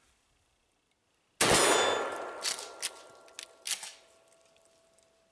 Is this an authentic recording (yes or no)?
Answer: yes